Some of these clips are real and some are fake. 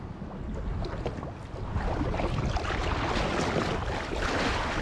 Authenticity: real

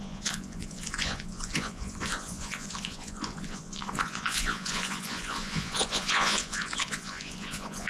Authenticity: fake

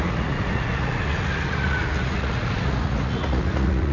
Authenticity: fake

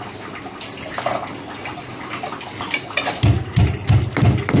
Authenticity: real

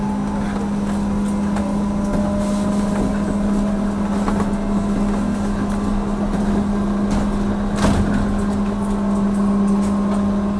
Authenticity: real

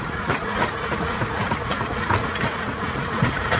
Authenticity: fake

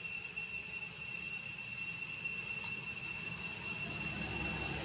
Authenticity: real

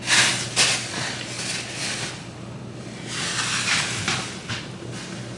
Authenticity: real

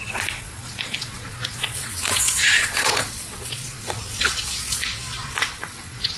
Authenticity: fake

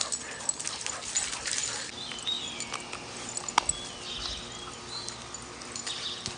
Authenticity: real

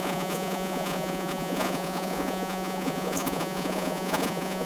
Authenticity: fake